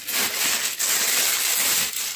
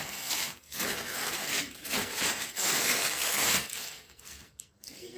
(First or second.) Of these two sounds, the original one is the first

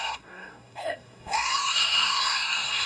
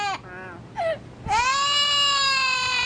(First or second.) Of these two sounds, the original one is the second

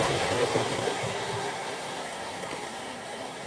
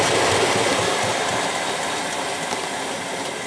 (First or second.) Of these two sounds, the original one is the second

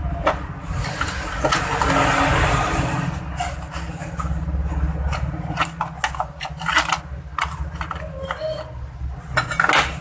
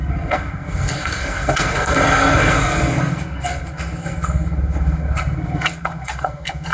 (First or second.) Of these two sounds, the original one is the first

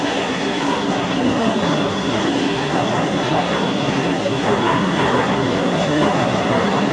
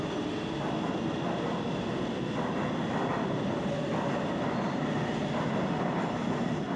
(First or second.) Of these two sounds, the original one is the second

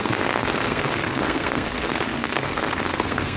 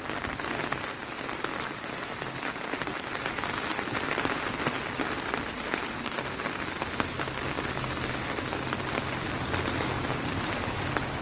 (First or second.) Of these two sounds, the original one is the second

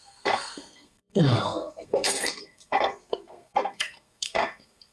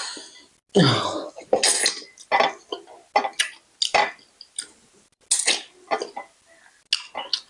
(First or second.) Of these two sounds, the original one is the second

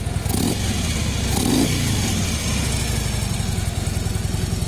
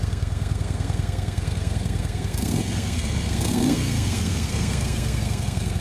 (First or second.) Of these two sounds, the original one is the first